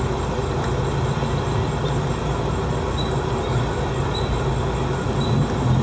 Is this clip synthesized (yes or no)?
no